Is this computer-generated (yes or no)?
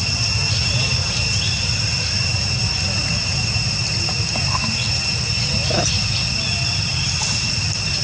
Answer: no